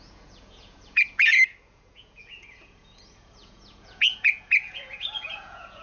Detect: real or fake fake